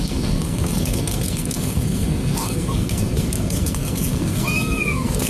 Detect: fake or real fake